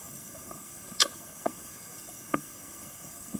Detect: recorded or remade remade